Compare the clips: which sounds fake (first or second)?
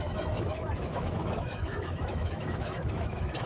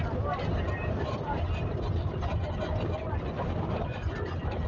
first